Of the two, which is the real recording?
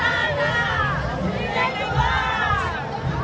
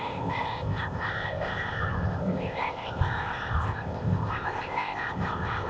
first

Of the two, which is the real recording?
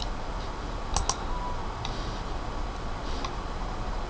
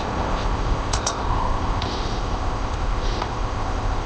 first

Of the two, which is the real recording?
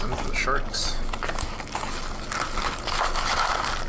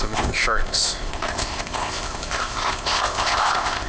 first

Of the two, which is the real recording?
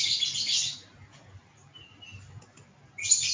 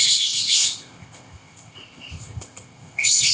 first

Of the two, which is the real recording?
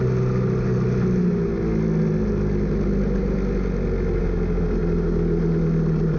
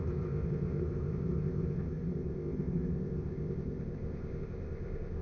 first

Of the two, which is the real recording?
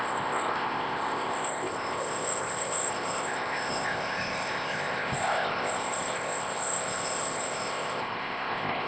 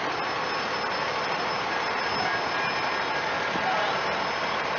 second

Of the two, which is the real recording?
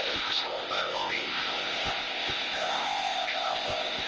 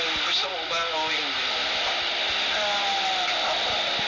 second